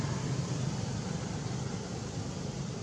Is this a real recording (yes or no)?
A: no